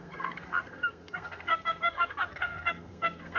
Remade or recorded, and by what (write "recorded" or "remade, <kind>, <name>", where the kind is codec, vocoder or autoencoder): remade, codec, SNAC